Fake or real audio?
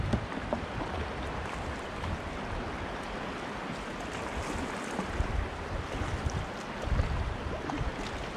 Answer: real